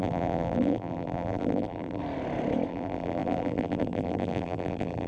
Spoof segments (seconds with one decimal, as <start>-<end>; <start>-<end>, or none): 0.0-2.0; 2.7-5.1